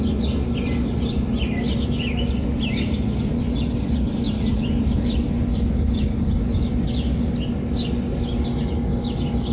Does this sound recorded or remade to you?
recorded